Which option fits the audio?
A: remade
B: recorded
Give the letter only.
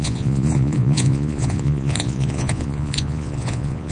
A